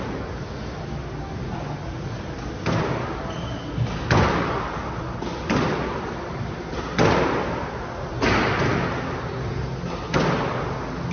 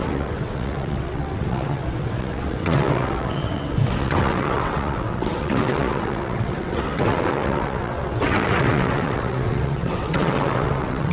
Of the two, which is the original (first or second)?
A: first